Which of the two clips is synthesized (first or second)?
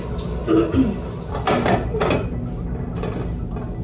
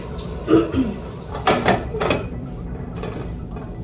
second